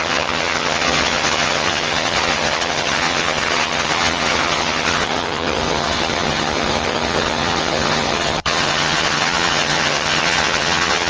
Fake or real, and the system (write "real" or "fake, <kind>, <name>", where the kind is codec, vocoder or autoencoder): fake, vocoder, HiFi-GAN